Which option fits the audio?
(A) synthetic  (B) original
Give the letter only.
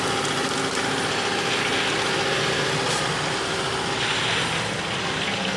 B